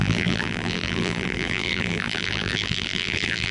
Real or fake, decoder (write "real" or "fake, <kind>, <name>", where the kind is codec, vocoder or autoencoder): fake, vocoder, BigVGAN v2